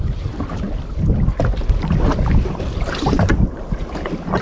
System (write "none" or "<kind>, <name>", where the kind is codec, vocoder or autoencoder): vocoder, BigVGAN v2